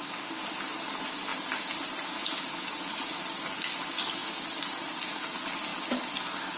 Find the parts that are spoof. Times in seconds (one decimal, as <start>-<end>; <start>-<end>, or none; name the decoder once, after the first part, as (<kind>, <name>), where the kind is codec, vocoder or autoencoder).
none

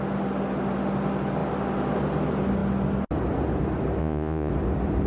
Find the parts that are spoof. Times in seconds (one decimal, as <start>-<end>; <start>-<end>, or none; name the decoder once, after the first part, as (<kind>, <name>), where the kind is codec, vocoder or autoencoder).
4.0-4.5 (vocoder, Vocos)

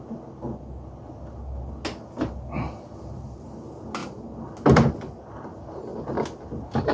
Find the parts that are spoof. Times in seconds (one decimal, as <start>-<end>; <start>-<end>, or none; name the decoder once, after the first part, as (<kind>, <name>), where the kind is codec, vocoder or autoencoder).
none

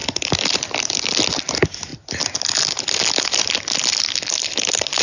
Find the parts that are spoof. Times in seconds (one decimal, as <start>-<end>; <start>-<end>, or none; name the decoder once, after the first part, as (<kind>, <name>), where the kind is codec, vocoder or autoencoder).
none

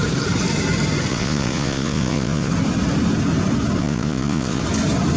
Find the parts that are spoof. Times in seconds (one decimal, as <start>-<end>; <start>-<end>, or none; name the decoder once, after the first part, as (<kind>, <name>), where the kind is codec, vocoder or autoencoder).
1.1-2.5 (vocoder, Vocos); 3.8-4.6

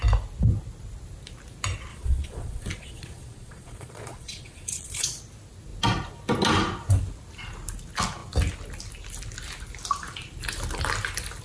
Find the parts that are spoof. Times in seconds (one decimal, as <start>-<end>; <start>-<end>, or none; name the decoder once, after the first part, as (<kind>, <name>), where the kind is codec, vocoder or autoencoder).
1.9-5.2 (vocoder, Vocos)